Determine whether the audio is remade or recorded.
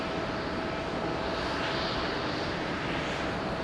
recorded